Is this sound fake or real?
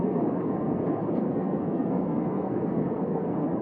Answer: fake